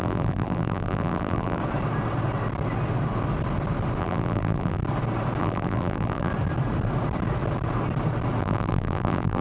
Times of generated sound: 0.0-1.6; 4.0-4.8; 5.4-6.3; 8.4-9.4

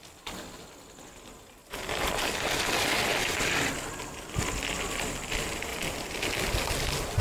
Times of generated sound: 1.6-2.3